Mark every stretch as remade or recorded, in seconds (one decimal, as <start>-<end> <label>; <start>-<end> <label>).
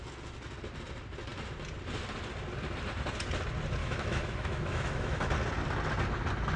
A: 0.0-3.8 recorded; 3.8-5.3 remade; 5.3-6.6 recorded